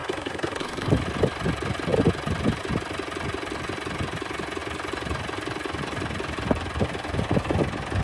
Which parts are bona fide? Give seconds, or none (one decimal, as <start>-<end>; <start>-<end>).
0.9-8.0